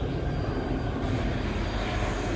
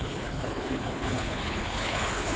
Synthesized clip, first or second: second